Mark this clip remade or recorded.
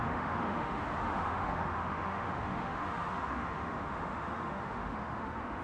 remade